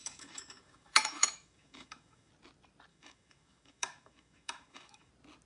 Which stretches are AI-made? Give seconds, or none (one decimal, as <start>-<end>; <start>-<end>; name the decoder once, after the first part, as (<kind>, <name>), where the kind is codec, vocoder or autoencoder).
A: 0.0-2.3 (autoencoder, DAC-VAE); 2.9-5.1